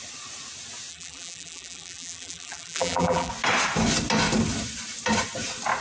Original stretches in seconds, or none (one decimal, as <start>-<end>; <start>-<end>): 0.0-0.9; 3.3-5.8

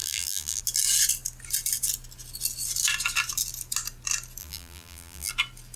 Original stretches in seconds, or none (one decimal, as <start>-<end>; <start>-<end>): 0.6-4.4; 5.3-5.8